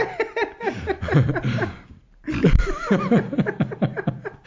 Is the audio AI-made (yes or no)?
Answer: yes